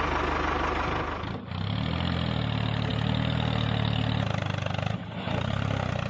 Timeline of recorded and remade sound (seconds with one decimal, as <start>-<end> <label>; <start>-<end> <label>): 0.0-6.1 recorded

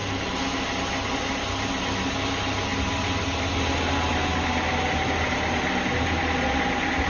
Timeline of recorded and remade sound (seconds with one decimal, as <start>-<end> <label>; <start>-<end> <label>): 0.0-7.1 recorded

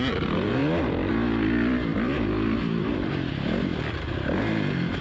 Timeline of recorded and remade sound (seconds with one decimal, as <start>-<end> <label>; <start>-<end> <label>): 0.0-1.9 recorded; 1.9-3.3 remade; 3.3-5.0 recorded

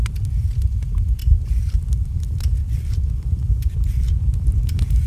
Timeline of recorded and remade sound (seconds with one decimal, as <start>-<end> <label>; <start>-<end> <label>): 0.0-1.2 recorded; 1.2-3.7 remade; 3.7-5.1 recorded

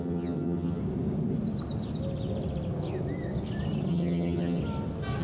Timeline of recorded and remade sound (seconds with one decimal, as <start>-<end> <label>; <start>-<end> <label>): 0.0-0.8 remade; 0.8-3.9 recorded; 3.9-4.6 remade; 4.6-5.2 recorded

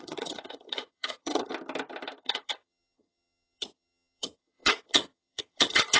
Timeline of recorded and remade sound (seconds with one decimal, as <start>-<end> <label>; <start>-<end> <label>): 0.0-1.5 remade; 1.5-2.2 recorded; 2.2-6.0 remade

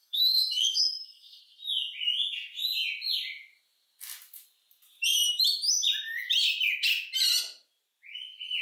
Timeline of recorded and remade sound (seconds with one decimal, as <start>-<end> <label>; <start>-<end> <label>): 0.0-1.4 remade; 1.4-8.6 recorded

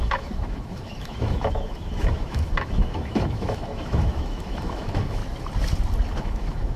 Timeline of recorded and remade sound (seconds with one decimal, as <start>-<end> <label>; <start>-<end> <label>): 0.0-5.2 remade; 5.2-6.2 recorded; 6.2-6.8 remade